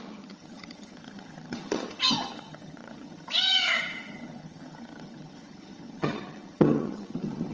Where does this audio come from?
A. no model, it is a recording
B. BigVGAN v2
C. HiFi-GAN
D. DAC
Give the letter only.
C